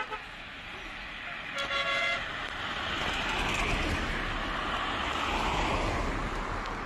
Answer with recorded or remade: recorded